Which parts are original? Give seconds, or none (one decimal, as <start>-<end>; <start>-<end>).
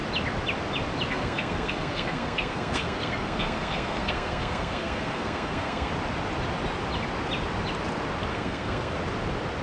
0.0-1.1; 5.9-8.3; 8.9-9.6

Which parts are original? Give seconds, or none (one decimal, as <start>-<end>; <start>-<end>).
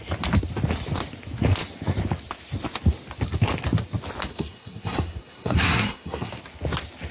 0.0-4.3; 6.3-7.1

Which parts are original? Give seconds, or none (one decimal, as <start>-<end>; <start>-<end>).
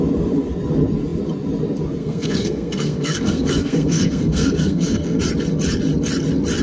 0.0-2.0; 5.2-6.6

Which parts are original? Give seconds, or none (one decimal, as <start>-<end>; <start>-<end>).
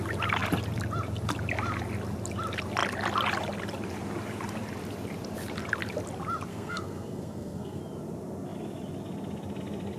0.0-6.5; 7.8-10.0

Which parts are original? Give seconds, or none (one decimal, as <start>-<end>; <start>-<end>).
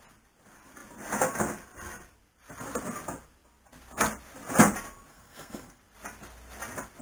0.0-5.1; 5.8-7.0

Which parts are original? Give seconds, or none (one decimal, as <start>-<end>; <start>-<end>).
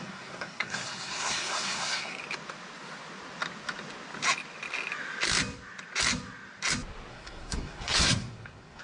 2.2-7.1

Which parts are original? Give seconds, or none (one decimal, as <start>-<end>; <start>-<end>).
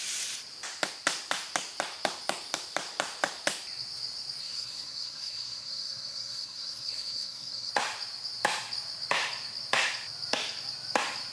0.0-4.4; 7.7-11.3